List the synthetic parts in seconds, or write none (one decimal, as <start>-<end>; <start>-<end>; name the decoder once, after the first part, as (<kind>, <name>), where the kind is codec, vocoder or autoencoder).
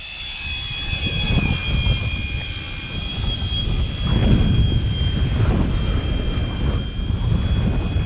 none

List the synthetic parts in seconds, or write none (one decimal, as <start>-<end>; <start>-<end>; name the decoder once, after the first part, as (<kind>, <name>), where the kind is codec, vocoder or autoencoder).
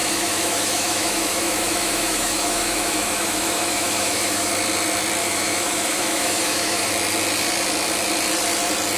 0.0-4.5 (autoencoder, DAC-VAE); 5.2-6.9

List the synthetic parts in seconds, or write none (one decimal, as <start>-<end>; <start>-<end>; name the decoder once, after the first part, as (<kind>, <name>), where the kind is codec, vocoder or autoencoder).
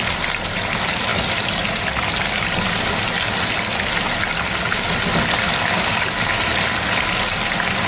none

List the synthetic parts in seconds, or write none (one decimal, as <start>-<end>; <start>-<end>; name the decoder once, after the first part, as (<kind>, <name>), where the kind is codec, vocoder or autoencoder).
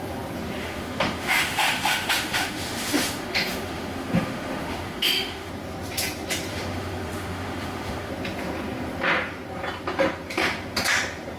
0.6-5.5 (autoencoder, DAC-VAE); 6.5-8.1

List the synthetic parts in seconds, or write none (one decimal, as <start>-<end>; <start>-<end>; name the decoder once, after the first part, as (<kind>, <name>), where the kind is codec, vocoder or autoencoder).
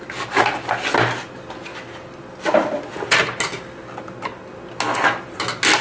none